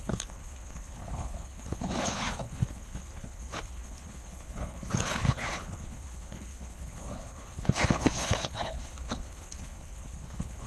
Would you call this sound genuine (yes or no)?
no